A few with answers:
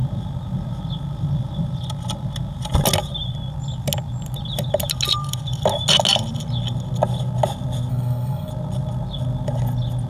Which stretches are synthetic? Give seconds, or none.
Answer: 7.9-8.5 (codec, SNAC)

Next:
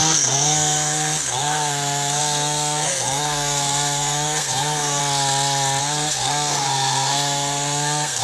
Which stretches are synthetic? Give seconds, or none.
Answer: 0.0-5.0 (codec, SNAC); 5.8-8.2

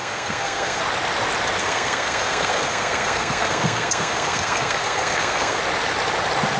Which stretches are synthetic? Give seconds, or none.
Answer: 0.0-0.8 (codec, SNAC); 1.6-5.6

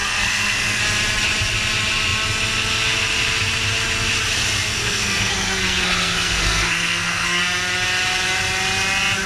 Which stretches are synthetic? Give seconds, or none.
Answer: 0.0-0.8 (codec, SNAC); 4.7-7.4

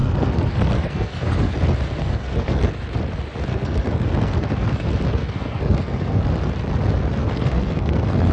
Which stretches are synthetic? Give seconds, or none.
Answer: 0.0-1.5 (codec, SNAC); 2.0-2.7; 3.5-6.2; 7.2-8.3